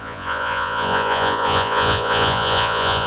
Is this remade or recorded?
remade